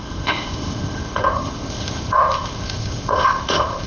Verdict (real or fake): fake